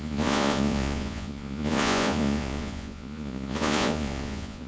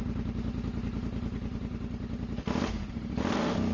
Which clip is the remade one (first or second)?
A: first